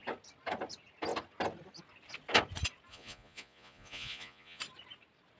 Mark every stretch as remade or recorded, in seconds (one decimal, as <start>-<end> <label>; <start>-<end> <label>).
0.0-2.9 recorded; 2.9-4.6 remade; 4.6-5.4 recorded